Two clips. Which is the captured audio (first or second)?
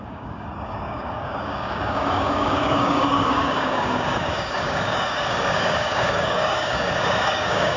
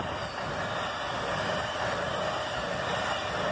second